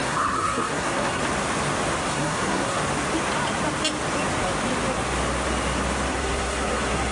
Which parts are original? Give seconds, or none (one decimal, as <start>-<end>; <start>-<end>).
1.2-2.0; 2.8-6.1